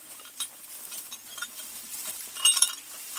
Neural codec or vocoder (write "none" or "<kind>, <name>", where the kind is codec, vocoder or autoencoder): vocoder, BigVGAN v2